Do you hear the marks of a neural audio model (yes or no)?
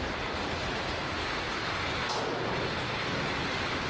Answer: no